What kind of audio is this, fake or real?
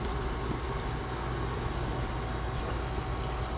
real